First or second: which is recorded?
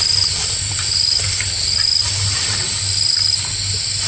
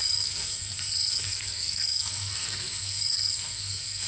first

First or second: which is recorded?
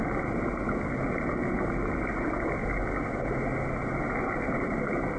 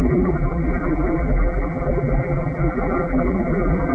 first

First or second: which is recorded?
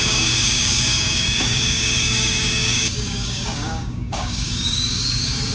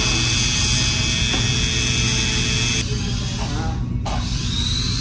second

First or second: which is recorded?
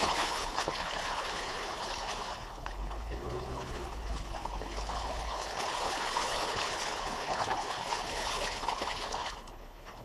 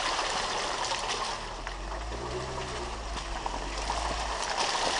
second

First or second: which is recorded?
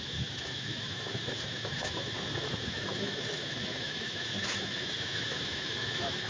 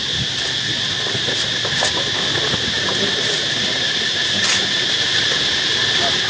second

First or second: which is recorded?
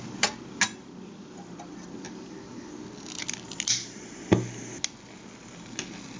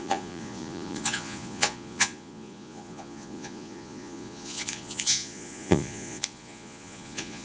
first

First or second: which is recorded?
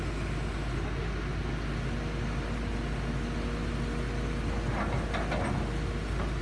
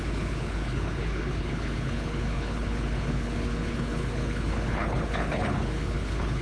first